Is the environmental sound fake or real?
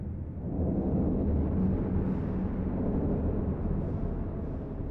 real